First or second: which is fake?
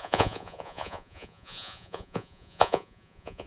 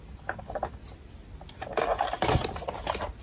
first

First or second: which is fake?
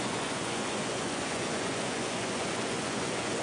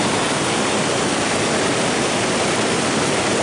first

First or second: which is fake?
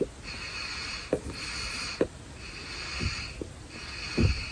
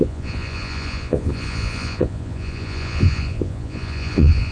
second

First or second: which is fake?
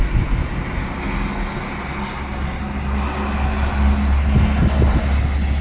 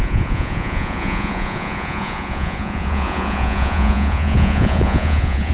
second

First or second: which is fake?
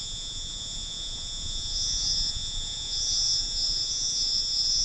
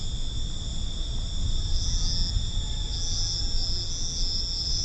first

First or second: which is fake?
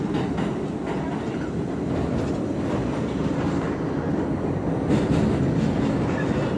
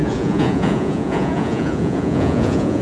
second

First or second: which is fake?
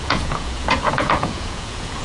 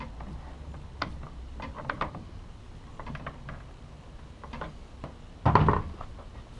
first